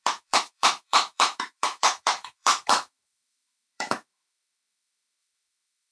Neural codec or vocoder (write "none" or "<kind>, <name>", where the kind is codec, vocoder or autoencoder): autoencoder, DAC-VAE